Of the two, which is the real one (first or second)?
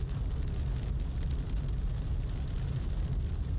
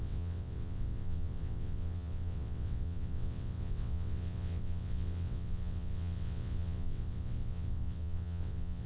first